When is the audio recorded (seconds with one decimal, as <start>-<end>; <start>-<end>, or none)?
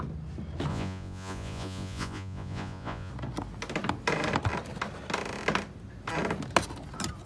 0.0-0.7; 3.1-7.3